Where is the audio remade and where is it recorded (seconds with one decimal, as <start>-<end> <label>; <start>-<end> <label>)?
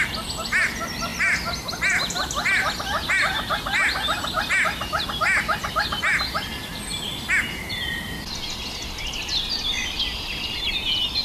0.0-11.2 recorded